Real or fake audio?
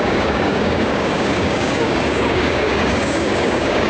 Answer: fake